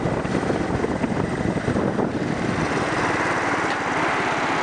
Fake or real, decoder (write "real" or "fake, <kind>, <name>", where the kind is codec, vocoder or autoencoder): real